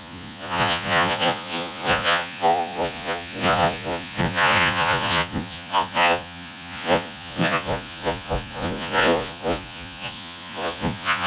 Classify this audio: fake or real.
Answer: fake